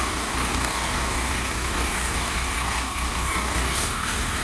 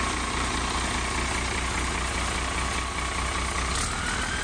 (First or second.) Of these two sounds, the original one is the second